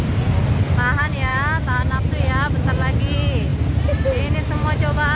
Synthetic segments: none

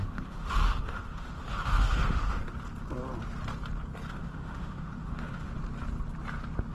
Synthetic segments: 0.0-2.4 (autoencoder, DAC-VAE); 4.1-5.5

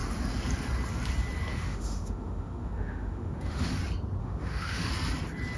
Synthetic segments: 1.5-3.8 (autoencoder, DAC-VAE); 4.2-4.9

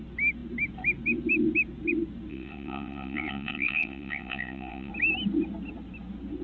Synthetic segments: 2.3-4.9 (vocoder, WaveNeXt)

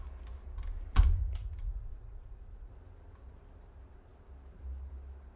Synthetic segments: 1.2-2.7 (vocoder, Vocos)

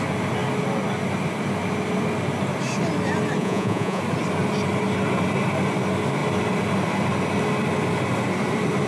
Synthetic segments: 3.4-4.0 (vocoder, Vocos)